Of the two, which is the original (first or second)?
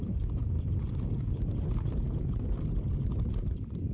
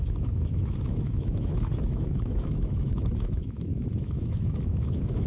first